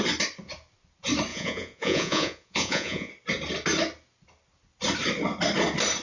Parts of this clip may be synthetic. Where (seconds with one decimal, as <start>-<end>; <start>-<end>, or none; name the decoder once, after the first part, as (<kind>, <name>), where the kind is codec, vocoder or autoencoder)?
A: 1.3-3.1 (vocoder, Vocos)